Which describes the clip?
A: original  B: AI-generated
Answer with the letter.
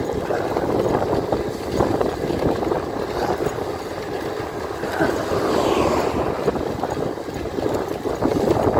A